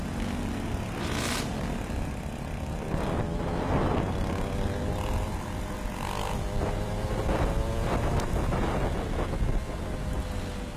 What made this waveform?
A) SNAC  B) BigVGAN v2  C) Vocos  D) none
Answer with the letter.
D